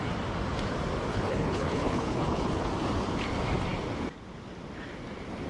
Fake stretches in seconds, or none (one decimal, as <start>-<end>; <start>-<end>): 1.1-2.7